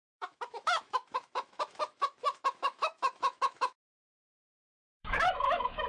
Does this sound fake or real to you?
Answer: fake